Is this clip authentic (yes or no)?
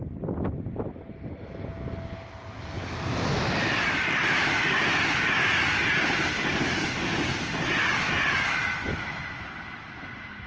yes